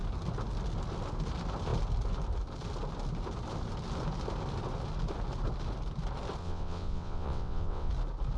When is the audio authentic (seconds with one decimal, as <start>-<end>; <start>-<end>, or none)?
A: 0.0-6.4; 7.9-8.4